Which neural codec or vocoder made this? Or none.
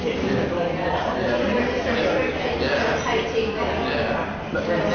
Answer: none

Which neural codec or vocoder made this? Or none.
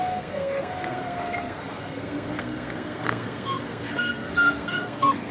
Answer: codec, SNAC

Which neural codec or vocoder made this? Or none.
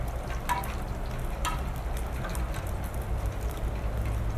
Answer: none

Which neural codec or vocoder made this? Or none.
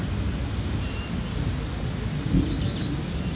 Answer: none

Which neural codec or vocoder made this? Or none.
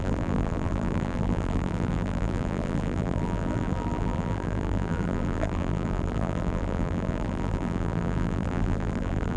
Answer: vocoder, BigVGAN v2